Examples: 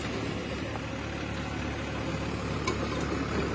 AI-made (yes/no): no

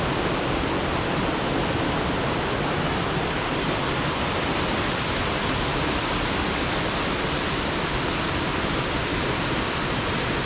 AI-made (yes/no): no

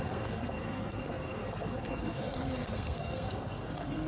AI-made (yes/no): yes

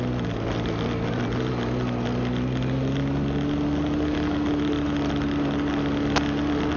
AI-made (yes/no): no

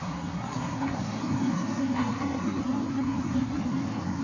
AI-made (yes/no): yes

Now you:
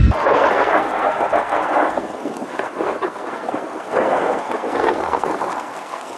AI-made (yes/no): yes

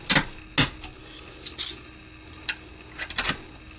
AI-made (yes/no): no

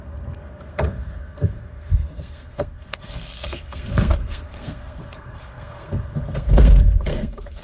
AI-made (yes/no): yes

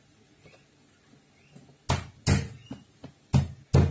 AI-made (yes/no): no